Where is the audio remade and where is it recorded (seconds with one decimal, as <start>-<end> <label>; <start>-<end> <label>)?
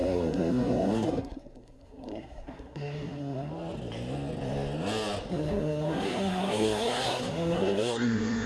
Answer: 0.0-3.5 remade; 3.5-5.3 recorded; 5.3-8.5 remade